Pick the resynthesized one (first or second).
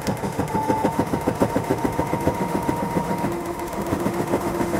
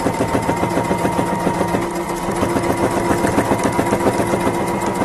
first